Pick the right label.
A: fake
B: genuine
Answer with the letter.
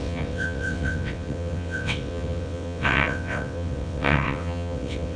A